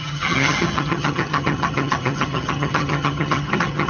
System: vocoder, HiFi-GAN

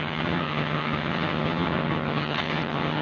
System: vocoder, HiFi-GAN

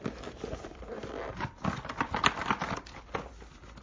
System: none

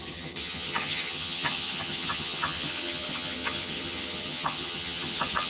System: vocoder, HiFi-GAN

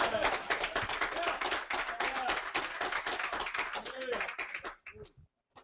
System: none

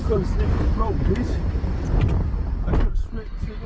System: none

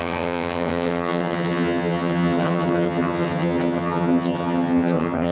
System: vocoder, HiFi-GAN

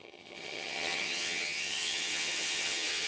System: vocoder, HiFi-GAN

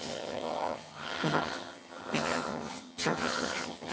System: vocoder, HiFi-GAN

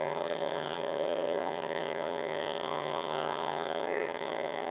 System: vocoder, HiFi-GAN